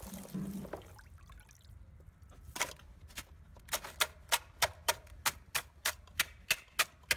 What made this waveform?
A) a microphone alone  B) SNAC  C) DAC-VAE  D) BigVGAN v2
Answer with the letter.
A